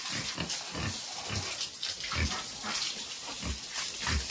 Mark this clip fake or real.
real